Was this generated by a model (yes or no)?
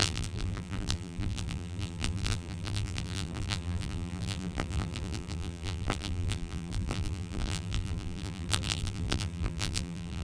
yes